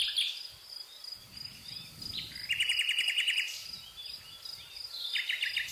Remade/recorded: recorded